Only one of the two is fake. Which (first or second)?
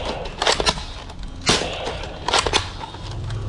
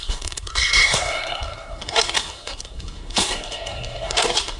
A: second